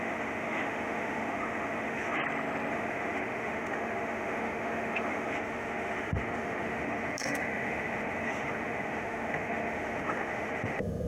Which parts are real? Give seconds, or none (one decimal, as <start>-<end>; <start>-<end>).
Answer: 2.2-2.7